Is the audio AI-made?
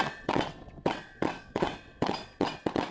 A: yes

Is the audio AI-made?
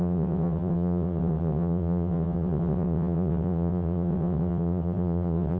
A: yes